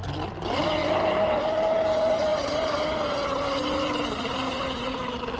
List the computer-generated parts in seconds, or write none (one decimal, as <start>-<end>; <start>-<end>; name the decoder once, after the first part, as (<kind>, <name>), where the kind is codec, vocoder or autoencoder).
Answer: 0.8-1.4 (vocoder, BigVGAN v2); 2.3-2.8